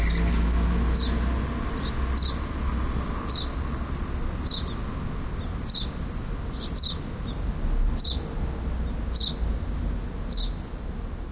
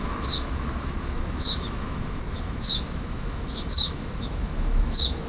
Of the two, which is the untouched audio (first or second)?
first